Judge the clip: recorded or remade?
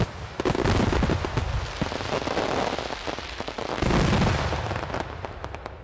recorded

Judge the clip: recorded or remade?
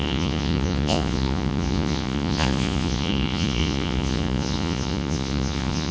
remade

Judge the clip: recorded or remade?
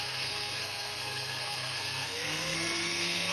remade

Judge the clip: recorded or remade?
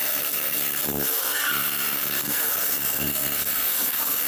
remade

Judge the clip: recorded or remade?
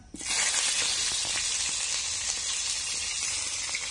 recorded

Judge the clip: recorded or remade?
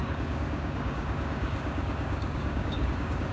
remade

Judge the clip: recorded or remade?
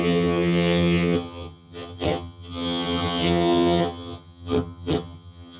remade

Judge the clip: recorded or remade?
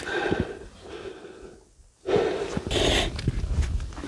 recorded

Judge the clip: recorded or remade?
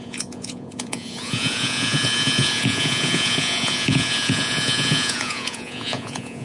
remade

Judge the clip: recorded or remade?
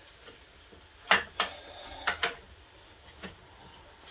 recorded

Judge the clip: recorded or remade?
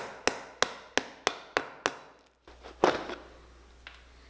recorded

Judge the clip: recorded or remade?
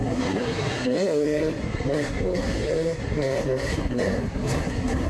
remade